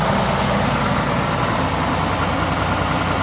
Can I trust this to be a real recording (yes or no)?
yes